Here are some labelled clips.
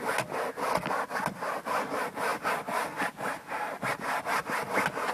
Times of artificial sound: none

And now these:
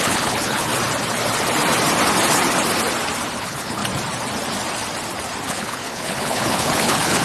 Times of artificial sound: 0.0-0.7 (codec, HILCodec); 3.4-3.8; 5.5-7.2

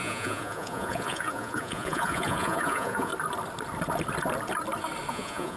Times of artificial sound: 0.0-3.1 (vocoder, Vocos); 5.1-5.6

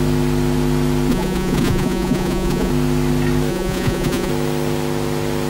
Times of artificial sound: 1.1-2.7 (vocoder, Vocos); 3.5-4.3